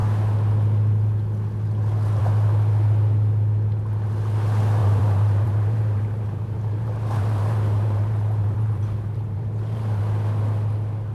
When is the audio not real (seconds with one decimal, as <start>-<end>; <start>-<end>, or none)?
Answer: 4.8-10.0

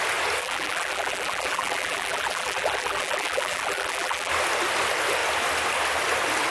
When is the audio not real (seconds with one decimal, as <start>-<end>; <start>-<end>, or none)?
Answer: 0.4-4.3

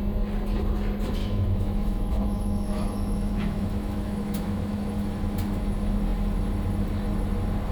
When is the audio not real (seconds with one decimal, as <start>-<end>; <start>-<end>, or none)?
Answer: 1.2-5.1